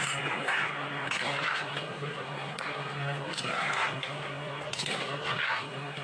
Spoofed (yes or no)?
yes